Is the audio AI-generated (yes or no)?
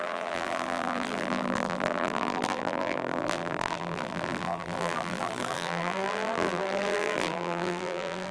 yes